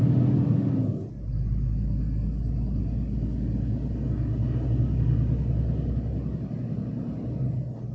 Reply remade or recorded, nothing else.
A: recorded